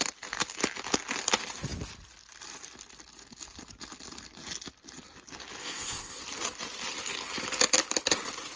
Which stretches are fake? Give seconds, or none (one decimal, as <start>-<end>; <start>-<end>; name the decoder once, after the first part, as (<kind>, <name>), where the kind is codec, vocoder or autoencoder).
5.6-6.2 (codec, ZipCodec)